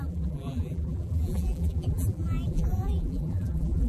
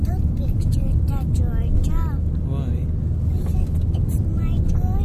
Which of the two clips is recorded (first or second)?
second